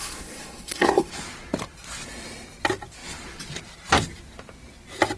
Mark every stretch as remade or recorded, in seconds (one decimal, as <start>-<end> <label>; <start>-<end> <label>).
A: 0.0-1.1 remade; 1.1-5.2 recorded